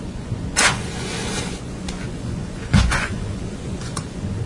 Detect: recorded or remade remade